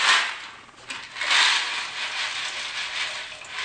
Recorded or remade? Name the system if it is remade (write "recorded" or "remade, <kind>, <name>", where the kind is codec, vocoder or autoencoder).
recorded